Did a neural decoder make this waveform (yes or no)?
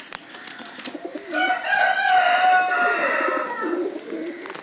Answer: no